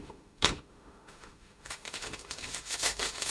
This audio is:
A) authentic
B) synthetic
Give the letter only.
B